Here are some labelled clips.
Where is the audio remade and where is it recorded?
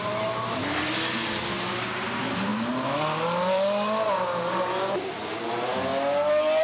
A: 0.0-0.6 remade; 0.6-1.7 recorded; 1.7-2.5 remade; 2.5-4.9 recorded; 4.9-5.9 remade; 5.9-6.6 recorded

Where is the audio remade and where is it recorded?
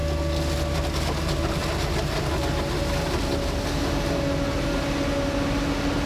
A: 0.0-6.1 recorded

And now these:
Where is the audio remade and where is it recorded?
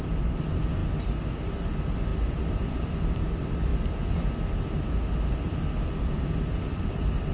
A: 0.0-0.8 remade; 0.8-1.4 recorded; 1.4-3.7 remade; 3.7-6.0 recorded; 6.0-7.3 remade